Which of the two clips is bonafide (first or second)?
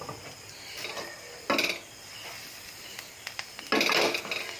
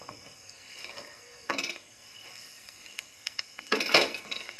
first